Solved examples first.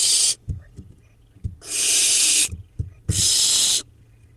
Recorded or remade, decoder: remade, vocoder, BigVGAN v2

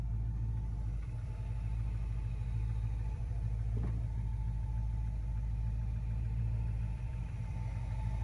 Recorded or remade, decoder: remade, vocoder, BigVGAN v2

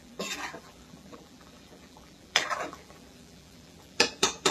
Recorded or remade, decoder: remade, vocoder, BigVGAN v2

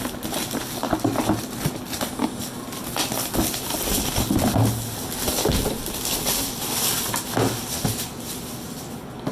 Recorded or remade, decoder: recorded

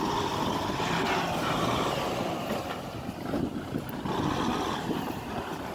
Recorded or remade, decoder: recorded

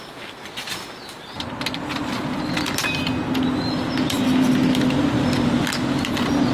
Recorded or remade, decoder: recorded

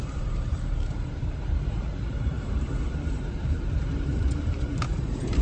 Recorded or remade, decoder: remade, vocoder, BigVGAN v2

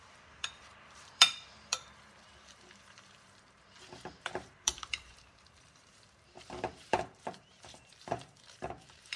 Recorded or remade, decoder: remade, vocoder, BigVGAN v2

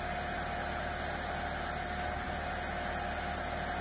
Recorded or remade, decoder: recorded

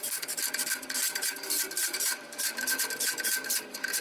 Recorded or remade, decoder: remade, vocoder, BigVGAN v2